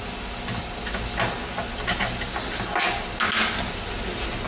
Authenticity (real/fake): real